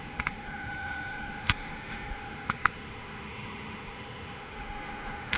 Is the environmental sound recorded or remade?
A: remade